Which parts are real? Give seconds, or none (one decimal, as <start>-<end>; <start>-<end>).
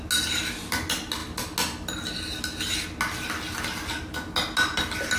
0.0-5.2